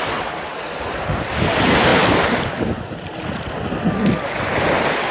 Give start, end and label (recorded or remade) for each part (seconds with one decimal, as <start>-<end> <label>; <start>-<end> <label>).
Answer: 0.0-5.1 recorded